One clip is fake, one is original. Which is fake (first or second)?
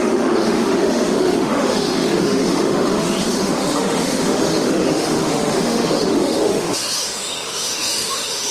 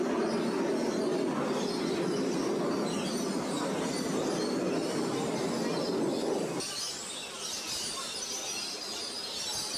first